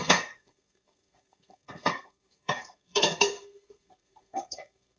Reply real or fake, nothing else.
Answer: fake